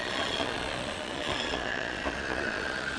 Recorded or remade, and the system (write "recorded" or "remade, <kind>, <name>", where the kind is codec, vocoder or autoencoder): remade, vocoder, Vocos